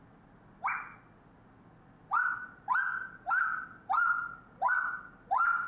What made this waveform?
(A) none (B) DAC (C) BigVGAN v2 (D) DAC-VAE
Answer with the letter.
A